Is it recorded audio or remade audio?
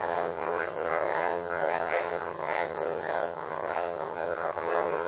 remade